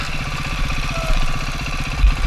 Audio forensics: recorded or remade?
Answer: remade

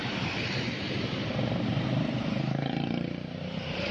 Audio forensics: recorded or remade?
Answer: remade